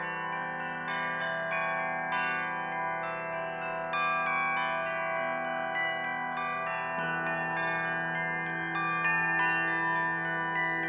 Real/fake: real